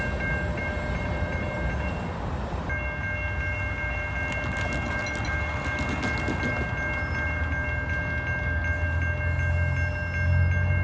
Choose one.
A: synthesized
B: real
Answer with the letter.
B